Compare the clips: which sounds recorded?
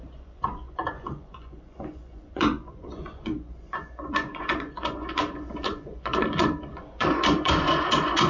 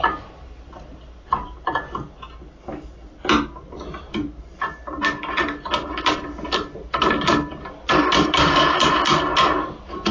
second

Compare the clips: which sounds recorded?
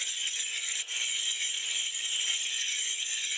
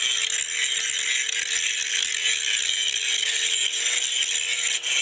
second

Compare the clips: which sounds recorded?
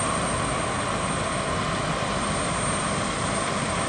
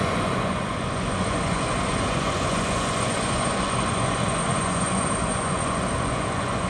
first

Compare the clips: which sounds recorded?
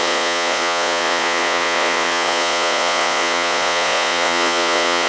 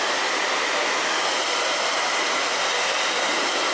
second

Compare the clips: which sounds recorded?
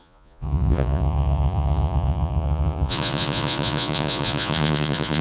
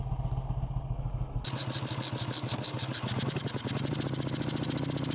second